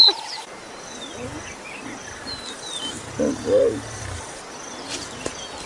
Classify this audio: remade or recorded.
remade